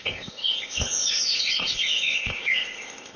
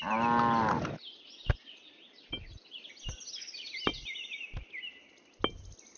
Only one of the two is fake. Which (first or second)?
first